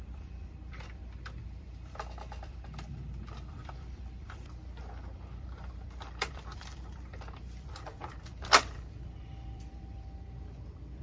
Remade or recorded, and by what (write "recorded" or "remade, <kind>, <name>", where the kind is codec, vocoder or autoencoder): remade, vocoder, BigVGAN v2